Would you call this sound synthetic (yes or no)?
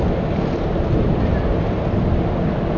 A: no